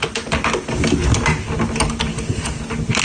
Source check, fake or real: real